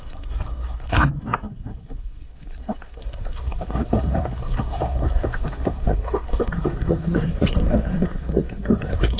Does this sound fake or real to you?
fake